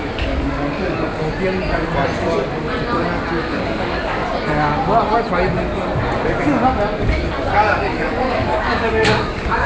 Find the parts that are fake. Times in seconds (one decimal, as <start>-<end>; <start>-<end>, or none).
0.0-1.2; 3.4-4.2; 7.0-9.7